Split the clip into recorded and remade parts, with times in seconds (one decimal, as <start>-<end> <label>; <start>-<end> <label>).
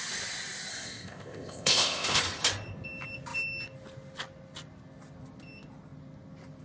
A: 0.0-0.7 recorded; 0.7-2.2 remade; 2.2-6.6 recorded